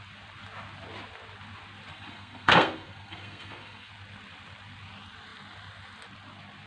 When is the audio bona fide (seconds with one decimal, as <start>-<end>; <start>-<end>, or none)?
0.0-1.9; 3.9-6.7